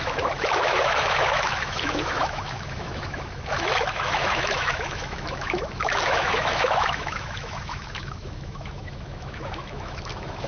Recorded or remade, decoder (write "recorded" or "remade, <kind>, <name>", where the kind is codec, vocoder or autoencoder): remade, autoencoder, DAC-VAE